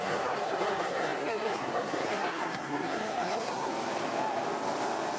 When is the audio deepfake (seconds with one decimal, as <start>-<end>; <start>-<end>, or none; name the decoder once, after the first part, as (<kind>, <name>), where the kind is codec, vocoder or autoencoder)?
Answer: 0.0-3.7 (codec, SNAC)